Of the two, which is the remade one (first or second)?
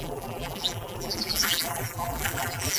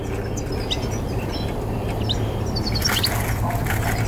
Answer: first